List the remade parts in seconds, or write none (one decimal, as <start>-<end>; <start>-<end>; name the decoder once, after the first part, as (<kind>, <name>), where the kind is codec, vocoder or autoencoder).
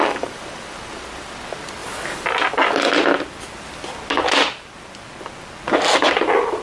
0.0-1.4 (vocoder, BigVGAN v2)